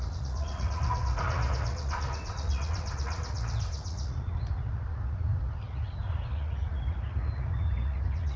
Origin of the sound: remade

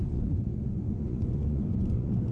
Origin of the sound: remade